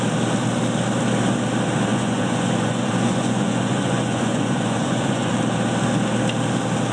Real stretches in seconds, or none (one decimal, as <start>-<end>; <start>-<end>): 0.0-1.9; 5.3-6.9